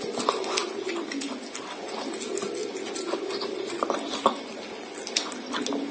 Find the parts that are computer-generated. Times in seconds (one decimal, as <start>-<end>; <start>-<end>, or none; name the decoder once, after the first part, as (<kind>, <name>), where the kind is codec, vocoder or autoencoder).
none